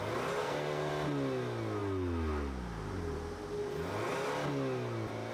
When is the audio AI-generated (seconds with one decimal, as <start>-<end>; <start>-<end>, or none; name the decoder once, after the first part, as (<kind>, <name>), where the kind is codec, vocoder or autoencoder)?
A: 0.4-0.9 (codec, SNAC)